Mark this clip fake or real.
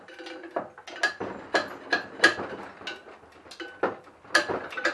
real